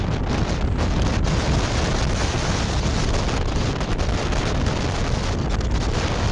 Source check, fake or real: real